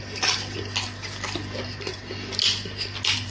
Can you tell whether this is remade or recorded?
recorded